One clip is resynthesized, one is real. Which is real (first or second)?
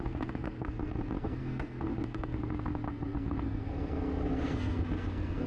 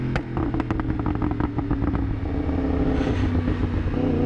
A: second